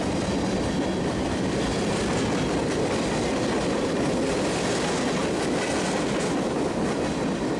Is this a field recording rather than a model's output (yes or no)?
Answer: yes